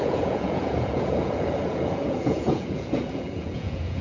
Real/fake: fake